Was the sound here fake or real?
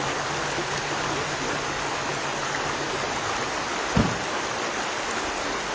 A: real